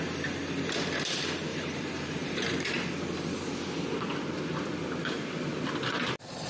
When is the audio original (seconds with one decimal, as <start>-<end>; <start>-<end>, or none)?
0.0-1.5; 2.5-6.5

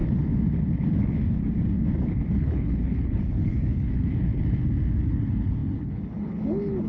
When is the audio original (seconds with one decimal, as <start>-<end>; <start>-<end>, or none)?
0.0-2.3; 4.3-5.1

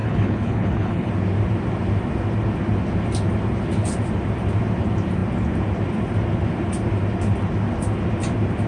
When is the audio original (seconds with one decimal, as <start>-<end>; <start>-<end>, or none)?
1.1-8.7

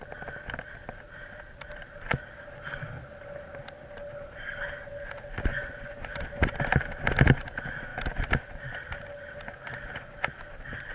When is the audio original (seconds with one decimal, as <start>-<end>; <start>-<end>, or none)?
0.0-5.5; 6.2-10.9

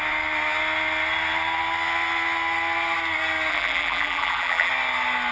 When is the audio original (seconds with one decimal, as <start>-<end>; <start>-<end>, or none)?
0.0-3.5; 4.7-5.3